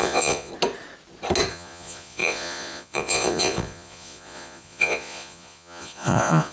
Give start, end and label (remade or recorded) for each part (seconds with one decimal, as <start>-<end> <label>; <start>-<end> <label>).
0.0-0.5 remade; 0.5-1.5 recorded; 1.5-6.5 remade